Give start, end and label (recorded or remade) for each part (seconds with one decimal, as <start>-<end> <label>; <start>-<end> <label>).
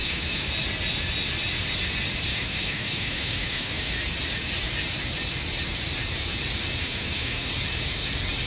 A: 0.0-0.5 remade; 0.5-2.3 recorded; 2.3-3.9 remade; 3.9-6.8 recorded; 6.8-7.5 remade; 7.5-8.5 recorded